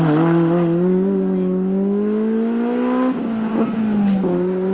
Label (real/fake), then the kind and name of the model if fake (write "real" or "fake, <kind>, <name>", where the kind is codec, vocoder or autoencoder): real